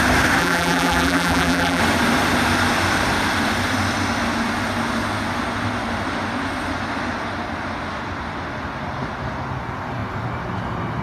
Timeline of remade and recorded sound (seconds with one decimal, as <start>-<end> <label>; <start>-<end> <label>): 0.0-0.4 recorded; 0.4-1.8 remade; 1.8-11.0 recorded